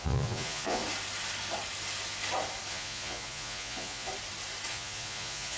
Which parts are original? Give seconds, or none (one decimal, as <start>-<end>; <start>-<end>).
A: 0.8-2.7; 4.1-4.7